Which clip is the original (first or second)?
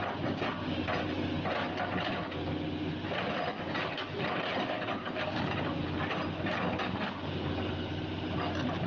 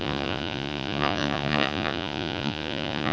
first